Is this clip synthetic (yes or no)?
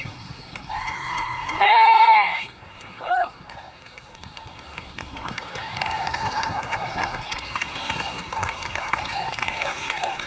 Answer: yes